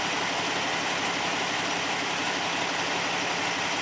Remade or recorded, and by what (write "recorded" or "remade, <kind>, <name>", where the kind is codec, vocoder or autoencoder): recorded